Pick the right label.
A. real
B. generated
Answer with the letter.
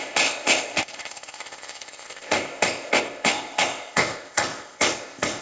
B